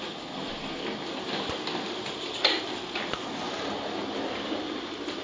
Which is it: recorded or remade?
recorded